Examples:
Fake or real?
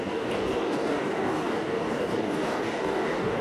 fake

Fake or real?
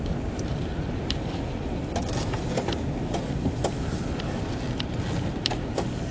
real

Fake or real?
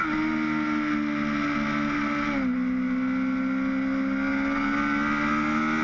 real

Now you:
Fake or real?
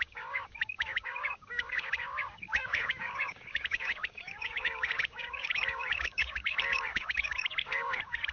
fake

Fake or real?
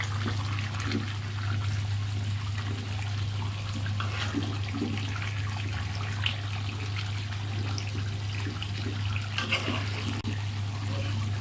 real